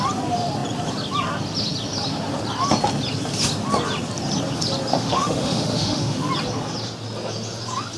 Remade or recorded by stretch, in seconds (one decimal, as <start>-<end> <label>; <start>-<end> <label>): 0.0-4.9 recorded; 4.9-6.3 remade; 6.3-8.0 recorded